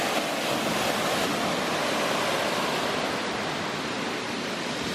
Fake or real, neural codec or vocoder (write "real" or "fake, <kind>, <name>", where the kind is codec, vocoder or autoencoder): real